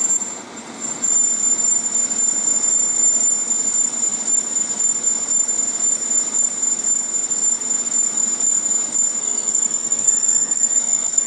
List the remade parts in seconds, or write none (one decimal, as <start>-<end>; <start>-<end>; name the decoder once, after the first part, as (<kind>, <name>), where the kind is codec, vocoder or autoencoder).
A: 9.2-11.3 (codec, SNAC)